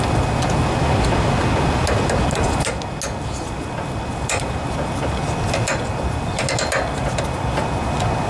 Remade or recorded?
recorded